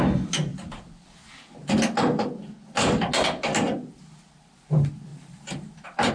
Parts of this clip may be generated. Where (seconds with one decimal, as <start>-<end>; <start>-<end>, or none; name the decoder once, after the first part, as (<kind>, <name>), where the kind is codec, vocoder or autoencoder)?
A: 5.1-6.1 (vocoder, BigVGAN v2)